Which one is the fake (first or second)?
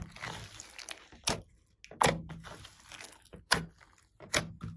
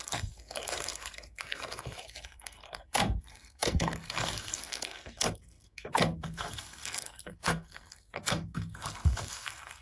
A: second